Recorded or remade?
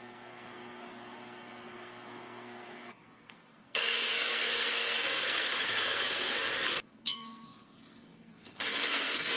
remade